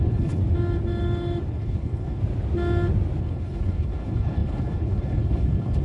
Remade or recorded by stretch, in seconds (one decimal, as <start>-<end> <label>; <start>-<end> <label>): 0.0-0.4 remade; 0.4-1.5 recorded; 1.5-2.2 remade; 2.2-3.2 recorded; 3.2-5.8 remade